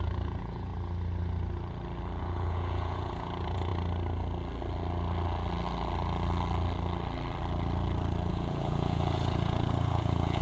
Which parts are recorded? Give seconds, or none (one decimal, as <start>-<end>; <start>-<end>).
0.7-2.2; 3.7-8.3